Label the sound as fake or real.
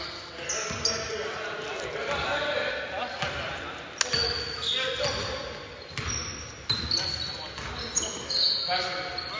real